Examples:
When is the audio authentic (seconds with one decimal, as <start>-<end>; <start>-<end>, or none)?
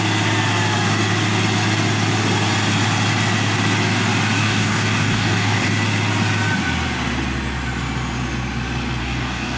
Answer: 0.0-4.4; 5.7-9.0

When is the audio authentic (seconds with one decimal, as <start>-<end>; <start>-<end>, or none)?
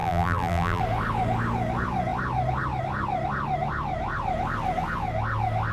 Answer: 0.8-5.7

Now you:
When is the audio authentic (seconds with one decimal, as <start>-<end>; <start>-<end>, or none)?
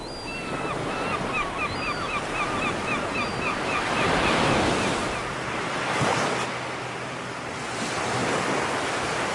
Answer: 0.0-9.3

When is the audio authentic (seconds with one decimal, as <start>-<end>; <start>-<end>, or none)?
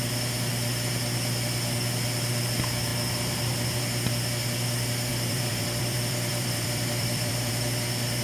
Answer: 0.0-5.1; 7.5-8.2